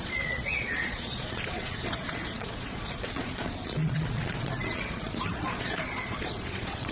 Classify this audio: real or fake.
fake